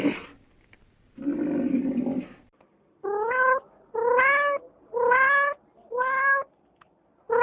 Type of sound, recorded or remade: recorded